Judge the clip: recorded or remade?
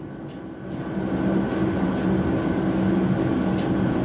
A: recorded